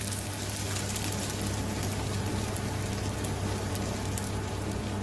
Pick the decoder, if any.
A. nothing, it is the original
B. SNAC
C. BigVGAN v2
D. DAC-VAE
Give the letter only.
A